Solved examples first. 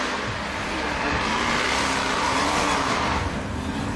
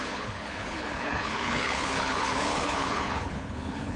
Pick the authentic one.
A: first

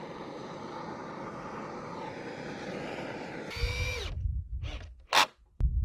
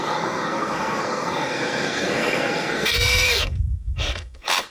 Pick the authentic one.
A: first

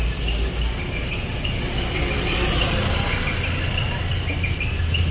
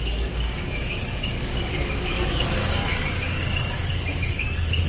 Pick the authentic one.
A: first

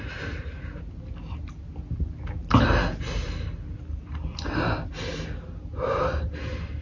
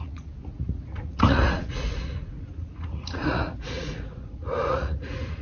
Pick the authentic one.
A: first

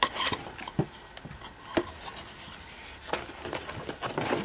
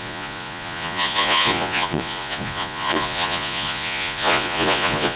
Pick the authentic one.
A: first